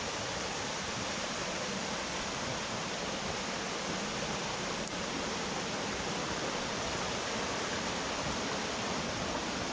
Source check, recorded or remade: recorded